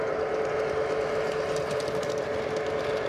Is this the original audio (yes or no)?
yes